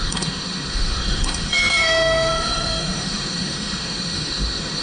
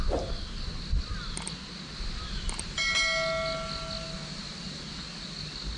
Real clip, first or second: second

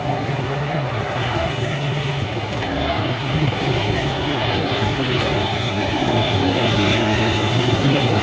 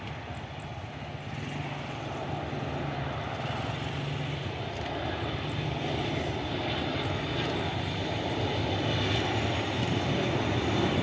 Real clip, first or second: second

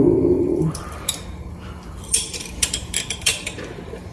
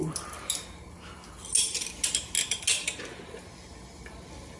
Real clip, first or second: second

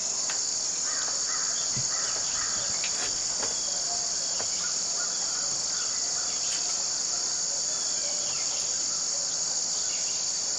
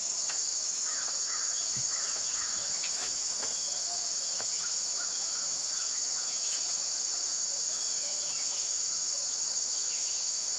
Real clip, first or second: first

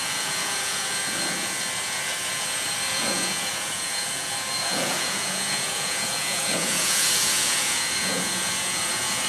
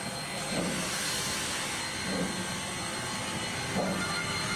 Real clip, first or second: second